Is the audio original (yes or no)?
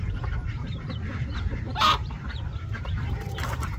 no